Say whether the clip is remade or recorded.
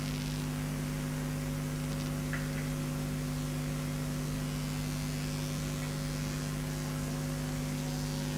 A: recorded